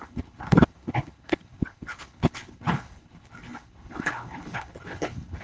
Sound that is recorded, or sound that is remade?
remade